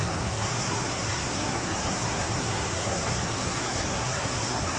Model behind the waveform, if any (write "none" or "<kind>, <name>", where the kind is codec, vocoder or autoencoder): codec, SNAC